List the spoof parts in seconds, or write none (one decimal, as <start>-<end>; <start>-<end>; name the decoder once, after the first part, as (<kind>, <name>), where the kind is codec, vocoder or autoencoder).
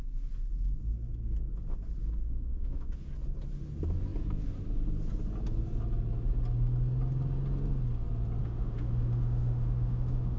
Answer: 2.2-2.9 (autoencoder, DAC-VAE); 8.4-10.4